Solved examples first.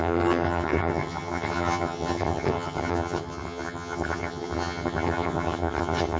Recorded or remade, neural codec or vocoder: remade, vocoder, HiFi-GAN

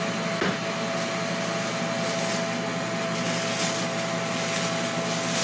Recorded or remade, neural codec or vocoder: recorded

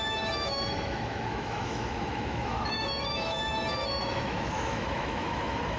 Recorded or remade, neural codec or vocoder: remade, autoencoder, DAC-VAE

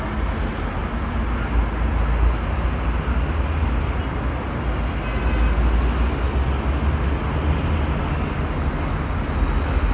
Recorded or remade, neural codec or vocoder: recorded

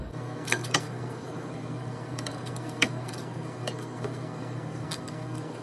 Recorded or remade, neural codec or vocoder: remade, codec, SNAC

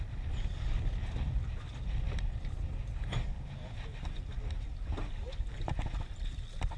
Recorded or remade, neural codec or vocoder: recorded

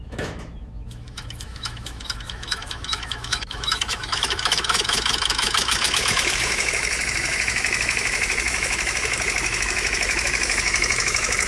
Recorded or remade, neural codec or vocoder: remade, autoencoder, DAC-VAE